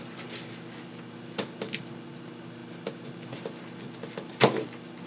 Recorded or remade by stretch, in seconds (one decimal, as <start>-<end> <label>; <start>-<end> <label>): 0.0-5.1 recorded